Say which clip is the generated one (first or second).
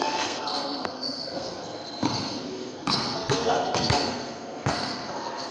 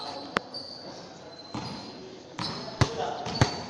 first